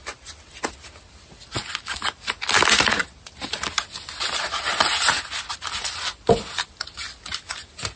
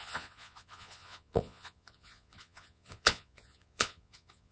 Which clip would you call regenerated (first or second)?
second